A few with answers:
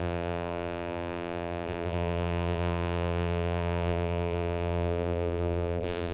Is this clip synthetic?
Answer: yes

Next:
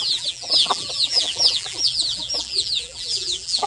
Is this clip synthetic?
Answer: yes